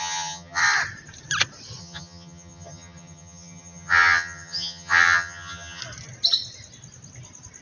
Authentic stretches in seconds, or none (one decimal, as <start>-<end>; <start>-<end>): 0.6-1.8; 5.8-7.6